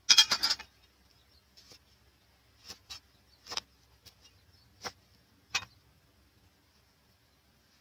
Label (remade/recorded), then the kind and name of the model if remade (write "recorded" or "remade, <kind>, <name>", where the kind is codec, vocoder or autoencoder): recorded